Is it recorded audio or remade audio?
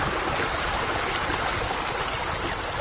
recorded